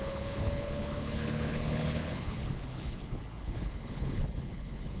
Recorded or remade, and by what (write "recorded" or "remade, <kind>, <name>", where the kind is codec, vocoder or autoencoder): remade, codec, HILCodec